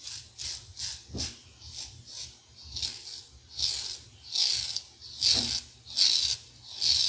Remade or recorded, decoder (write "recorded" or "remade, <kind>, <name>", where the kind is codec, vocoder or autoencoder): recorded